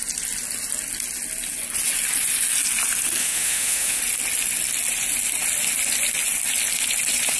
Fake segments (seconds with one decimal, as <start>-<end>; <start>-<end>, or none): 3.2-4.0